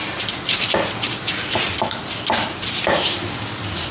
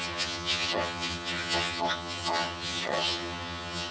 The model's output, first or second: second